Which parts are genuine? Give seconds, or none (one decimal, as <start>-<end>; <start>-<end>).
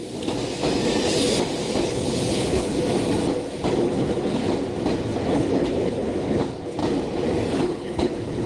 0.0-1.8; 2.7-3.8; 4.4-5.3; 6.8-7.5